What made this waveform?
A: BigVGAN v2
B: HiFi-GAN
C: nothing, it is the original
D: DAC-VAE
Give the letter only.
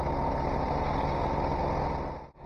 C